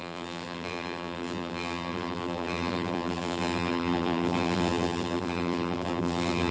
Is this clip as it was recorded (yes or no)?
no